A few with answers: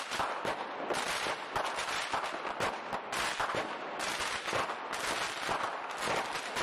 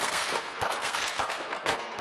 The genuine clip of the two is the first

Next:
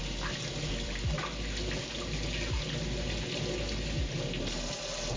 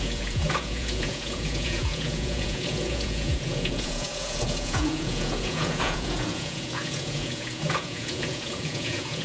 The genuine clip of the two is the first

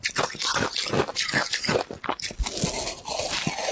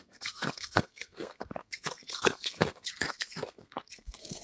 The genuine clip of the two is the first